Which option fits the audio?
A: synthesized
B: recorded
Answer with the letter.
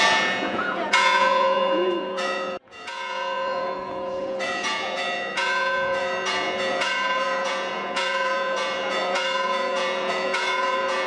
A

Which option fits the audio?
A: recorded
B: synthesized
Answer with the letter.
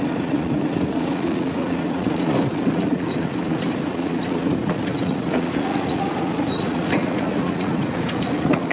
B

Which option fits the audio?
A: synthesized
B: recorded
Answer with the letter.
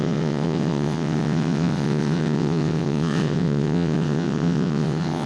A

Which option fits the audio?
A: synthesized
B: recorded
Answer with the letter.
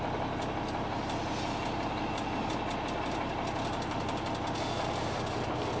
B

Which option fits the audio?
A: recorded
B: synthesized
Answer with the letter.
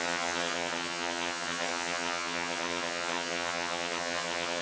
B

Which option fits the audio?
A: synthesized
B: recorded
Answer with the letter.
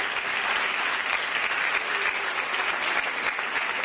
B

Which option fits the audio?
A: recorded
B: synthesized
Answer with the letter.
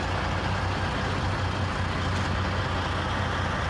A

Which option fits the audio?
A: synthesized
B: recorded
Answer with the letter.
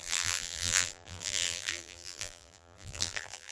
A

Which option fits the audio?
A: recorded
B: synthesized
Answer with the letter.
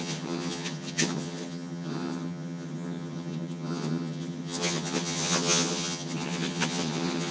B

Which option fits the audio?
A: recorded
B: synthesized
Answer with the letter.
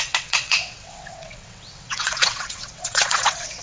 B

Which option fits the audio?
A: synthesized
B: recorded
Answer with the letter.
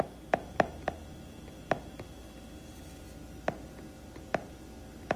B